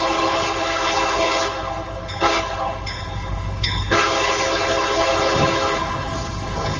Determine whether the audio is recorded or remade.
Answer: remade